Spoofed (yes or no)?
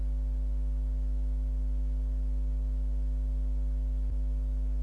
no